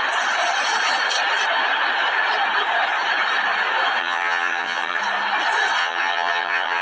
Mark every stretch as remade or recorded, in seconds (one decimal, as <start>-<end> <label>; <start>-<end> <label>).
0.0-4.0 recorded; 4.0-5.0 remade; 5.0-5.8 recorded; 5.8-6.8 remade